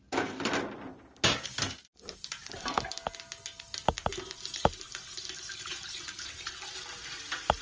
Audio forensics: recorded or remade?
recorded